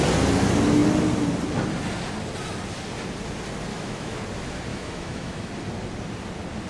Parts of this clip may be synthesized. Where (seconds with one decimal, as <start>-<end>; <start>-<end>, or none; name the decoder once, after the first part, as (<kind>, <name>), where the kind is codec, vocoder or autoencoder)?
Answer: 3.7-4.2 (autoencoder, DAC-VAE); 4.7-5.5